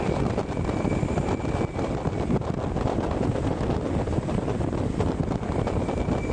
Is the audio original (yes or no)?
yes